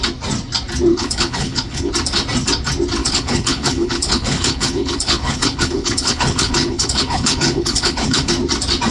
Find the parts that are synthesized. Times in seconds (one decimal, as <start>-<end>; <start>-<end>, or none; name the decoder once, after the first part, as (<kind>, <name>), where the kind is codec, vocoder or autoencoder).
0.9-1.9 (codec, HILCodec); 3.0-8.3